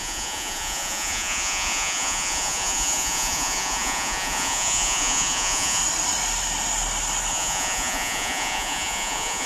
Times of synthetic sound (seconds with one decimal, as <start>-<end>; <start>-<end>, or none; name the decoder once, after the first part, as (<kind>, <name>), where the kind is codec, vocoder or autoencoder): 0.0-5.8 (vocoder, Vocos); 7.3-9.5